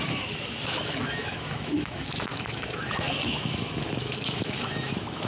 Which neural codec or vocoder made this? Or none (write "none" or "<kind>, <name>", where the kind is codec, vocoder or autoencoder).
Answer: autoencoder, DAC-VAE